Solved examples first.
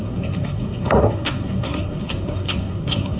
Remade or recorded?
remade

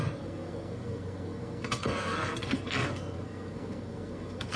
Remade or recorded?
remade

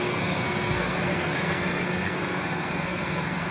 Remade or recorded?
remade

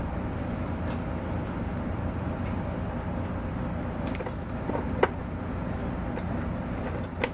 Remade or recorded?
recorded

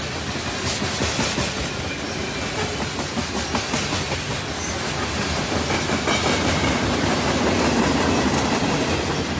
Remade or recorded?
recorded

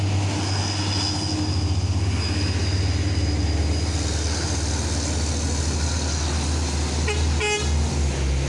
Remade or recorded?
recorded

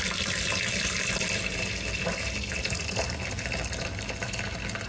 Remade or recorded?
recorded